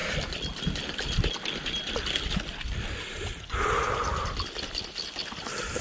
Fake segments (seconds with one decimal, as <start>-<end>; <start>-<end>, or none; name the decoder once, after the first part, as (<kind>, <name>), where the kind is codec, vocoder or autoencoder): 0.0-0.6 (vocoder, BigVGAN v2); 4.1-4.8

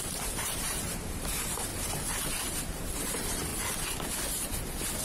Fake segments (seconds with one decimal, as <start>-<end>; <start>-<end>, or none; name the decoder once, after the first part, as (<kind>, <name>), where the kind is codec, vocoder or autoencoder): 0.0-1.7 (vocoder, BigVGAN v2); 3.0-3.5

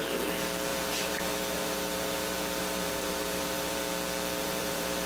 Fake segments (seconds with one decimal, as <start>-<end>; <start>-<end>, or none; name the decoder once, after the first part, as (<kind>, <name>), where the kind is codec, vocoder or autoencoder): 0.7-3.8 (vocoder, BigVGAN v2); 4.4-5.1

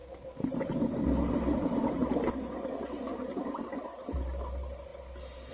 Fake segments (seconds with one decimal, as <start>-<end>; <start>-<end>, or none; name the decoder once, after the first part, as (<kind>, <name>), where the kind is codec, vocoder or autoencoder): 1.2-2.0 (vocoder, BigVGAN v2); 3.3-4.9

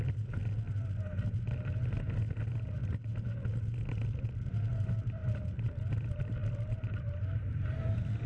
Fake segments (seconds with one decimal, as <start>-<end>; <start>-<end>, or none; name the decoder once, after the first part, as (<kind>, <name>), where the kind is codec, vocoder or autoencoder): 0.0-0.4 (vocoder, BigVGAN v2); 3.9-8.3

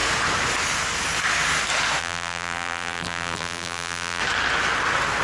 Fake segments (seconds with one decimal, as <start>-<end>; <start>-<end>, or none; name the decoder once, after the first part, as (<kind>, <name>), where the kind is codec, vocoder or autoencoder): 2.0-4.2 (vocoder, BigVGAN v2)